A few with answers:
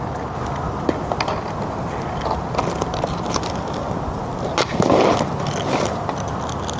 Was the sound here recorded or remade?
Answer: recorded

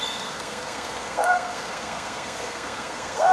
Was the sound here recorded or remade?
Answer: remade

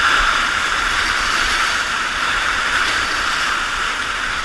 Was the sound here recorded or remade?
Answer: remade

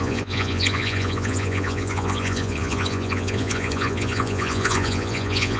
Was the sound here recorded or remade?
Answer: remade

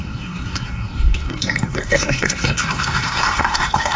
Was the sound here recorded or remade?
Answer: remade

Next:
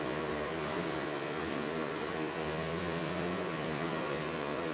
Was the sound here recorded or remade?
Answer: remade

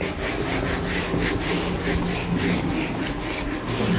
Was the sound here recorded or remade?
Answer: recorded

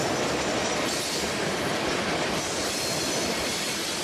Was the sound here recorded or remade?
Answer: recorded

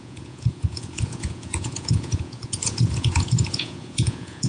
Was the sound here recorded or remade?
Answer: remade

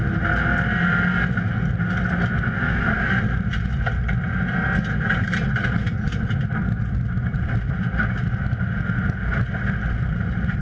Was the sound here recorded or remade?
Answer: recorded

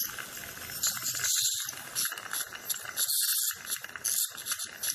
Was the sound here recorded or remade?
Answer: recorded